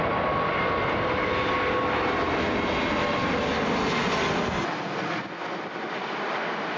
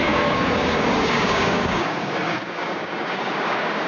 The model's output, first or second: second